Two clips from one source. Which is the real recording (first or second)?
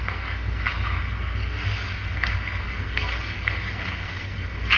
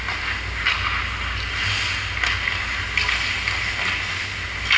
second